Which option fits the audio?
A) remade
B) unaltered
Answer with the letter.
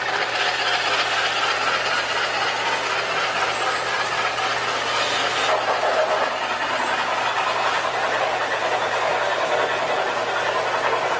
B